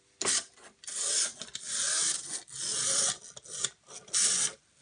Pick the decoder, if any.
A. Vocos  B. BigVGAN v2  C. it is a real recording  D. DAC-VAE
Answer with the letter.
C